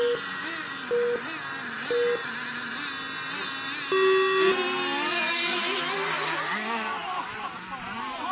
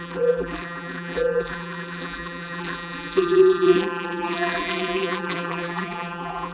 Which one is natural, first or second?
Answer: first